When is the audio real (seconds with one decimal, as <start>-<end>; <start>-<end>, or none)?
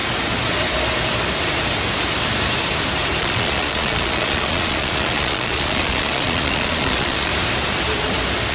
0.0-3.2; 7.3-8.5